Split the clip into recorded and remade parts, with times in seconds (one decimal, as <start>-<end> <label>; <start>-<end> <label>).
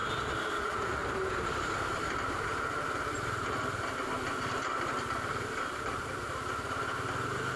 0.0-1.0 recorded; 1.0-3.9 remade; 3.9-5.3 recorded; 5.3-6.2 remade; 6.2-7.6 recorded